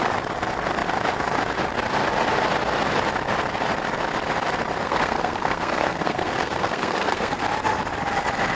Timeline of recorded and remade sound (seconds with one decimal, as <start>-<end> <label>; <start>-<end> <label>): 0.0-4.8 recorded; 4.8-7.4 remade; 7.4-8.5 recorded